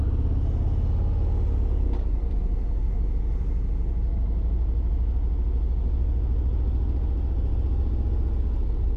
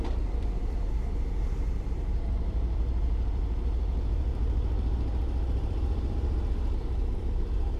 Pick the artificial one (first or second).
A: second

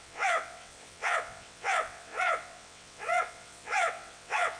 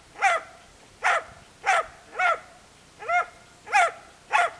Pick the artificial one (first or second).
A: first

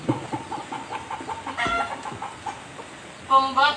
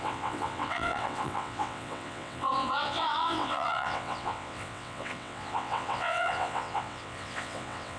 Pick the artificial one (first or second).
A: second